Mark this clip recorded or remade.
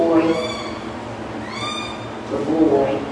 recorded